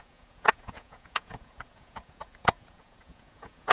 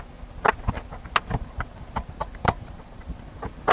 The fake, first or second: first